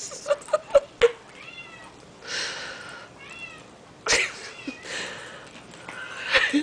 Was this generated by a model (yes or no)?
no